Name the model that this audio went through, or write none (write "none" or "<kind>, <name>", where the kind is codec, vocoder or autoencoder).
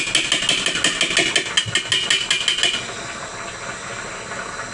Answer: none